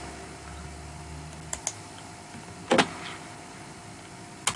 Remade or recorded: recorded